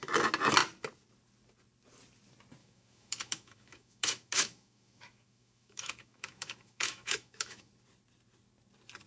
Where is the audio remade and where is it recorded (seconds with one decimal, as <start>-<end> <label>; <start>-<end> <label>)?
0.0-2.6 recorded; 2.6-7.7 remade; 7.7-9.1 recorded